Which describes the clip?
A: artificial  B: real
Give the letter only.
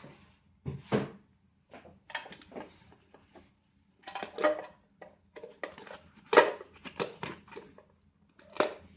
B